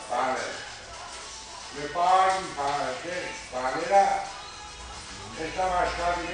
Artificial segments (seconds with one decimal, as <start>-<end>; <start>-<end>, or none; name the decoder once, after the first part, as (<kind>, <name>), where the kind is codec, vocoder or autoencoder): none

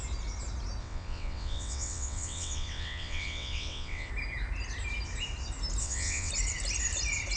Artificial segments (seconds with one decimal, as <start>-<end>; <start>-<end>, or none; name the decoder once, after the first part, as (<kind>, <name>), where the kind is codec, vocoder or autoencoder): 0.8-4.1 (vocoder, WaveNeXt); 5.8-6.3